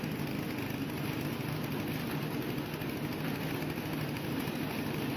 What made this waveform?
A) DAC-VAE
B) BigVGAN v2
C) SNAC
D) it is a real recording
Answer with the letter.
D